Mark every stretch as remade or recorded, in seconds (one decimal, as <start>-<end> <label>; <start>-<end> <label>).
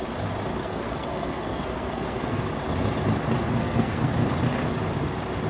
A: 0.0-0.6 recorded; 0.6-2.4 remade; 2.4-3.6 recorded; 3.6-4.1 remade; 4.1-5.5 recorded